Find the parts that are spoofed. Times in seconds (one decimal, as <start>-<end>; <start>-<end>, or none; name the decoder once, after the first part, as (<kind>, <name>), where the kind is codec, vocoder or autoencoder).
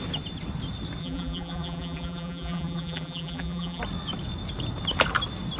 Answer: 1.0-3.8 (vocoder, BigVGAN v2)